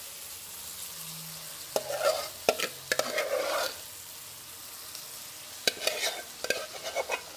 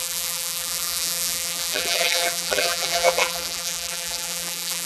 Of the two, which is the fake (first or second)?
second